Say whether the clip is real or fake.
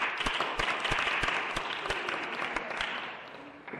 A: real